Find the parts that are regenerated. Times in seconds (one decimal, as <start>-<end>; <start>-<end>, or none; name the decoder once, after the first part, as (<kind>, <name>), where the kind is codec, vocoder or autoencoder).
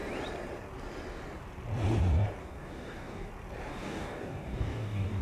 2.4-3.3 (codec, DAC); 3.7-5.2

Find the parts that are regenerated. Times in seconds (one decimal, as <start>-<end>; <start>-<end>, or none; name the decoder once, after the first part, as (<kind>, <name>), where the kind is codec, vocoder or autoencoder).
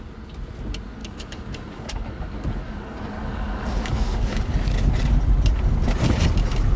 1.0-4.5 (codec, DAC)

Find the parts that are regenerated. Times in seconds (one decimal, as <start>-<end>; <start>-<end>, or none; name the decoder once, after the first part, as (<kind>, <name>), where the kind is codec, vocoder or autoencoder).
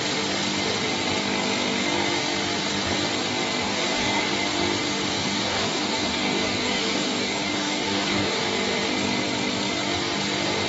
3.6-4.2 (codec, DAC); 5.1-8.4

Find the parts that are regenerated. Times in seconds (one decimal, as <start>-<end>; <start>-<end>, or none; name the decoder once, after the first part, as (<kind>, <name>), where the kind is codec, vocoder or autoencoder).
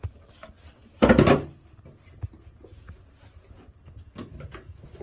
none